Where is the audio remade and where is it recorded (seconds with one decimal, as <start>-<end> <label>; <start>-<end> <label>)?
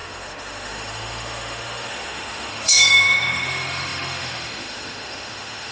0.0-5.7 remade